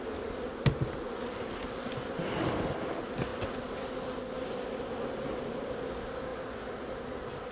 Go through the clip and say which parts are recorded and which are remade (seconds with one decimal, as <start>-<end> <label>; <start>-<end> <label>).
0.0-7.5 recorded